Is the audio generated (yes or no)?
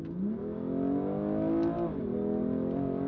no